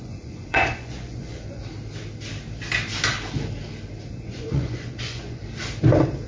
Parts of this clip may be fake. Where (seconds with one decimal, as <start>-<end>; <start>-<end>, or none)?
0.0-1.6; 4.1-5.4